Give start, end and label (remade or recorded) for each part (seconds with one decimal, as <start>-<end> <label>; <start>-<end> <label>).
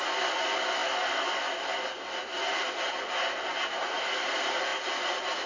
0.0-5.5 recorded